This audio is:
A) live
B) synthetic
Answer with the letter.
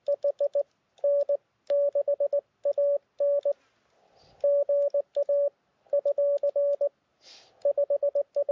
A